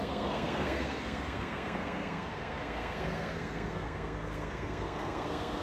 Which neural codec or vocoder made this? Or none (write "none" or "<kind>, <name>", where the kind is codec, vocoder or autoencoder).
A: codec, SNAC